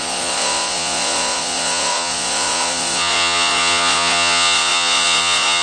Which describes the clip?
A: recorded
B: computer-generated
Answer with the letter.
B